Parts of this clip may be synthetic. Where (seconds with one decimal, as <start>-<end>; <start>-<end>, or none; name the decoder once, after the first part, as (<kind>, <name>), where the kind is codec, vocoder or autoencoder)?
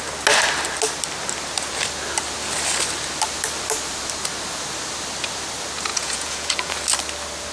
5.9-6.7 (vocoder, Vocos)